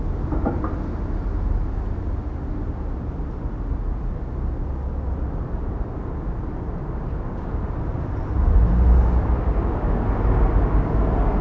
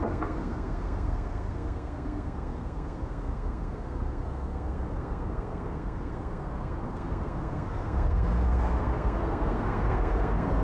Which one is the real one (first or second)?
first